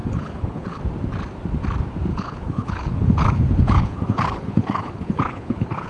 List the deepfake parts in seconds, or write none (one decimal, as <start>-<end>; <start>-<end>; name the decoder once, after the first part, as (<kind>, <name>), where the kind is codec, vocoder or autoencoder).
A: 0.0-0.8 (codec, HILCodec); 2.1-5.9